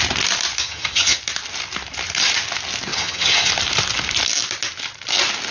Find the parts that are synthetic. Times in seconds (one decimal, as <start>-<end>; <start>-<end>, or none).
0.6-1.2; 2.9-3.5